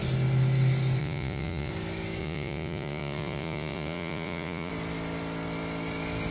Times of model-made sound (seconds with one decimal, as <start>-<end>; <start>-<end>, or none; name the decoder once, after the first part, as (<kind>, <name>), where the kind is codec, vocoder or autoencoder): 1.0-1.7 (vocoder, Vocos); 2.2-4.7